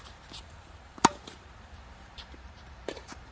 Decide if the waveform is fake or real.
fake